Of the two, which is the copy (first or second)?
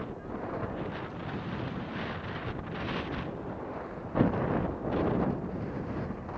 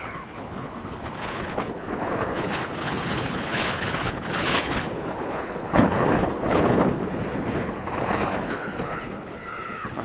second